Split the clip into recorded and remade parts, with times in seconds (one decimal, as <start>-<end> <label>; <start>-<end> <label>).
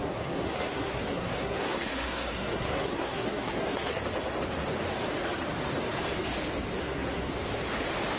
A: 0.0-4.0 remade; 4.0-6.8 recorded; 6.8-7.3 remade; 7.3-8.2 recorded